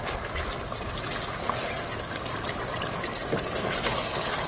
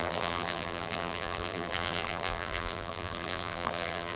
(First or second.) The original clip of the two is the first